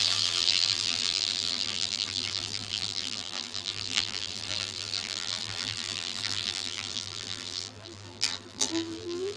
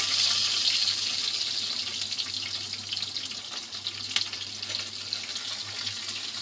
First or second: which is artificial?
first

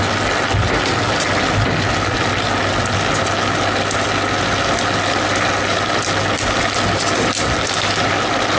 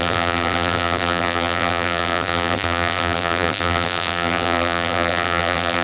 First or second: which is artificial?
second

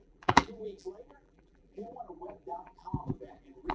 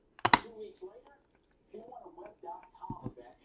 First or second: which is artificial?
first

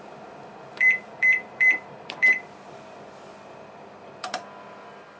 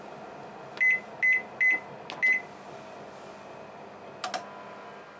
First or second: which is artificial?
first